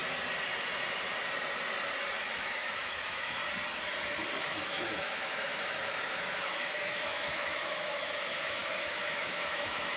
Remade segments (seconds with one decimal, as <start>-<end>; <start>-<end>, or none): 2.2-3.4; 4.4-10.0